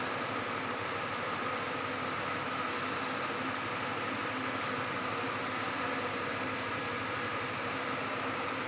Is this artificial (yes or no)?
no